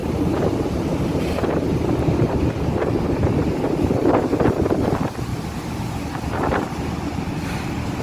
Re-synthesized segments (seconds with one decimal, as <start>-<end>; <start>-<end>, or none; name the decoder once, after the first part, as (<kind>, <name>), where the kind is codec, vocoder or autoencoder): 0.0-1.2 (vocoder, BigVGAN v2)